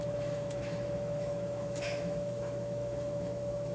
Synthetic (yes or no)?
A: yes